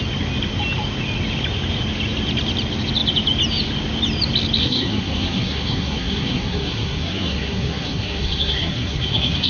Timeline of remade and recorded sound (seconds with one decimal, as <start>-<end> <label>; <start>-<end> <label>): 0.0-4.6 recorded; 4.6-9.5 remade